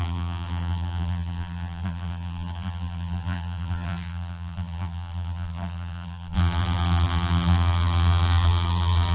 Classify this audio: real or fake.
fake